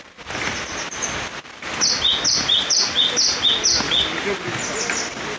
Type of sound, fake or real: real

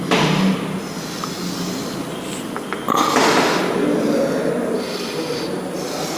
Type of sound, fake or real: real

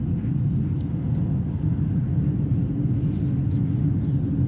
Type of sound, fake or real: real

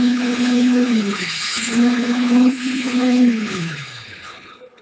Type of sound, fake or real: fake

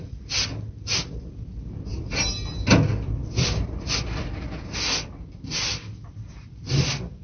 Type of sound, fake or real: real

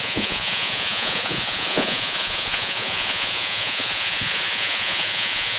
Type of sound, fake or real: fake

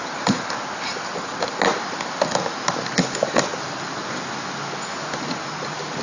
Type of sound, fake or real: real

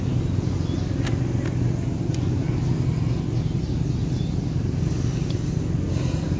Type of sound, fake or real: real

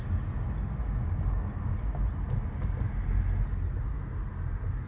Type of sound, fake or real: real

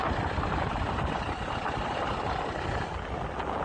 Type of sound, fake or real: real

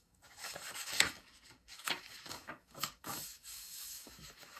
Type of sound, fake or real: fake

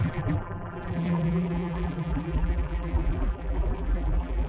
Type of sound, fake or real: fake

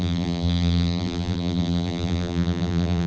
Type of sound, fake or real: fake